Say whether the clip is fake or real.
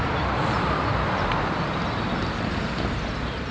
real